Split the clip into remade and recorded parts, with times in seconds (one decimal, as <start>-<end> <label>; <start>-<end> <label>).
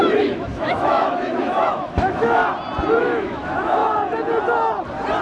0.0-2.4 remade; 2.4-3.0 recorded; 3.0-3.8 remade; 3.8-5.2 recorded